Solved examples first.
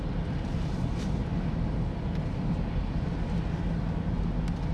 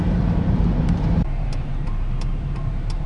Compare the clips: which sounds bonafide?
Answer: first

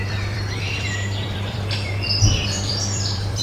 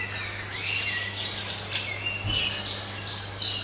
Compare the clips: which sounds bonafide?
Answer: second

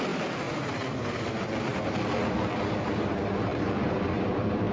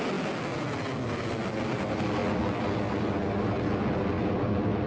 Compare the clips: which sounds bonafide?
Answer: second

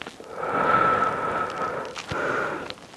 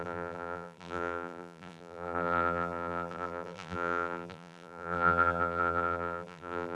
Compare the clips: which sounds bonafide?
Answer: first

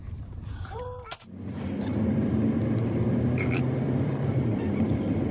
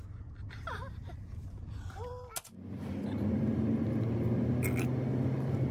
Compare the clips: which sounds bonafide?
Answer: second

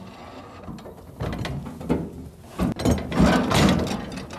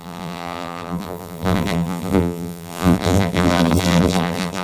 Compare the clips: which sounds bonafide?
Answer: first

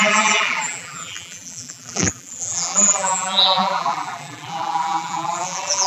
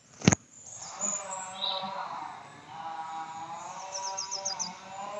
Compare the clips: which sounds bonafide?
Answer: second